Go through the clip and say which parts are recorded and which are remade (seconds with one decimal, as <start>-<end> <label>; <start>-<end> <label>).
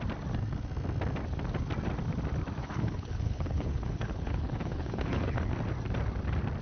0.0-2.6 recorded; 2.6-5.4 remade; 5.4-6.6 recorded